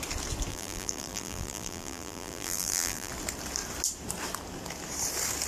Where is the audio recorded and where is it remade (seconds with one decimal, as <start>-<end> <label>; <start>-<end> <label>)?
0.0-0.5 recorded; 0.5-3.1 remade; 3.1-5.5 recorded